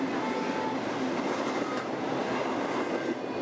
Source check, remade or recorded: recorded